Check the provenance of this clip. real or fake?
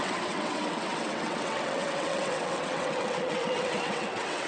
fake